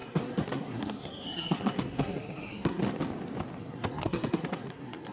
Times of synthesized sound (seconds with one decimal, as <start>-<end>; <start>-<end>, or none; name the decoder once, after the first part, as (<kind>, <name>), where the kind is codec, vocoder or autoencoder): 0.0-2.8 (codec, SNAC); 3.6-5.1